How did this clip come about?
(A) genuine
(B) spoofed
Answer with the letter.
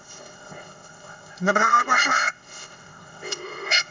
B